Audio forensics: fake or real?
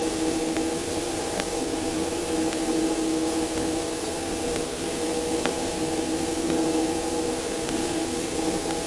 fake